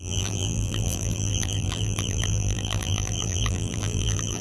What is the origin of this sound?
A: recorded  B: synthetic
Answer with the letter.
B